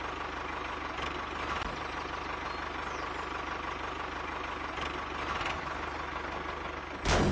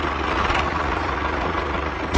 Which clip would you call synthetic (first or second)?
second